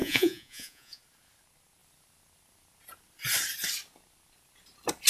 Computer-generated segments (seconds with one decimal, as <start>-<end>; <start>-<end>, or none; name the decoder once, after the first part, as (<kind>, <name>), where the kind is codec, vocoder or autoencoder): 0.0-1.0 (vocoder, Vocos)